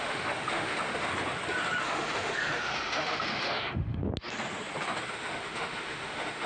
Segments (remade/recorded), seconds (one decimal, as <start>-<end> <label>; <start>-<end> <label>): 0.0-1.1 remade; 1.1-1.8 recorded; 1.8-4.0 remade; 4.0-5.1 recorded; 5.1-6.5 remade